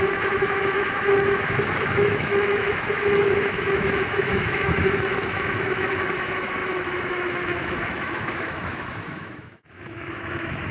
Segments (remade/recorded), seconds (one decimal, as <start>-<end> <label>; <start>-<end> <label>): 0.0-10.7 remade